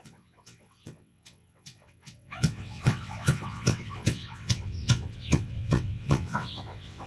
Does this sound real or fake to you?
fake